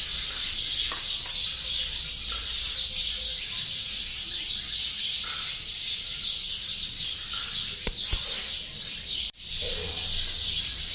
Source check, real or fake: real